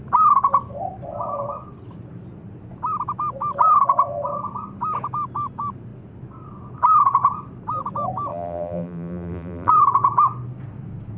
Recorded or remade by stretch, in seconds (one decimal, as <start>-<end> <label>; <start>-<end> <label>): 0.0-8.3 recorded; 8.3-9.7 remade; 9.7-11.2 recorded